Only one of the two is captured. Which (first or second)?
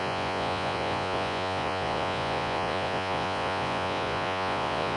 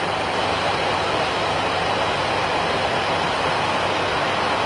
second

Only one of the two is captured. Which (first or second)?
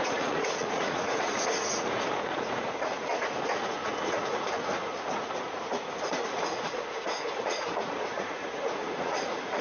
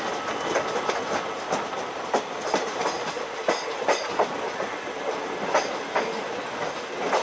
second